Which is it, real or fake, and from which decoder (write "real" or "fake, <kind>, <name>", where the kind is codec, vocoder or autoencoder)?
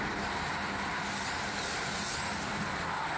real